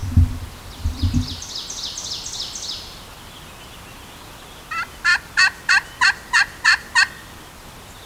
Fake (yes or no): no